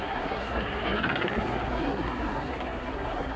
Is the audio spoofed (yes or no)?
yes